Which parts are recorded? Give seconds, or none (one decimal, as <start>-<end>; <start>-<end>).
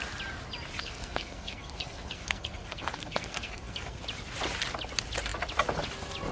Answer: 0.0-0.8; 4.0-6.3